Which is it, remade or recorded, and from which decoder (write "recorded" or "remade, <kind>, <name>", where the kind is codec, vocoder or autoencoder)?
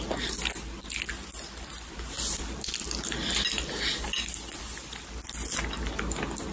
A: recorded